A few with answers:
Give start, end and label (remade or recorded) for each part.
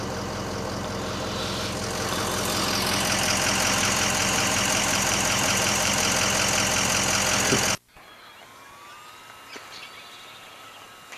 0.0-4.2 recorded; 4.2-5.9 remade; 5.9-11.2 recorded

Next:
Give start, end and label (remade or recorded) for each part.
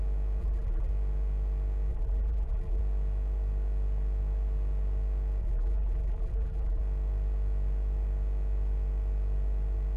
0.0-0.4 recorded; 0.4-0.9 remade; 0.9-1.9 recorded; 1.9-2.8 remade; 2.8-5.4 recorded; 5.4-6.8 remade; 6.8-10.0 recorded